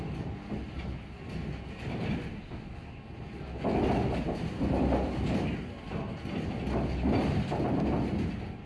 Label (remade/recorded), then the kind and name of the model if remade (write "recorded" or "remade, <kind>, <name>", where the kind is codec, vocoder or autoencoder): recorded